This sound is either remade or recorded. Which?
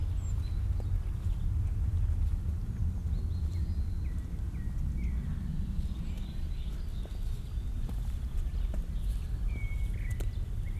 recorded